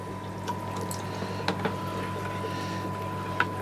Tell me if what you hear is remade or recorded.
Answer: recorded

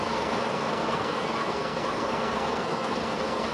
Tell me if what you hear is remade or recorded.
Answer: remade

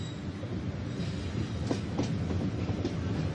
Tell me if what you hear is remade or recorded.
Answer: recorded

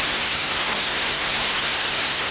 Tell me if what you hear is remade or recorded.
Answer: remade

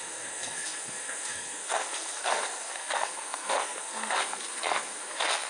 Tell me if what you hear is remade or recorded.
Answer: remade